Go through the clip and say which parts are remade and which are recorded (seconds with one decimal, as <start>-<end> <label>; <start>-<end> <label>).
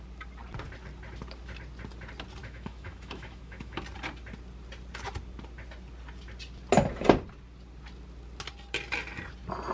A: 0.0-2.4 recorded; 2.4-3.8 remade; 3.8-9.7 recorded